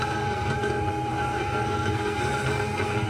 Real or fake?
fake